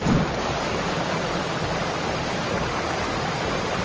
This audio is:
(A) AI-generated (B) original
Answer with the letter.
B